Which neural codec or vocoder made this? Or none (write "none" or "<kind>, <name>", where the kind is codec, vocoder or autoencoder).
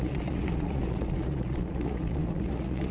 vocoder, Vocos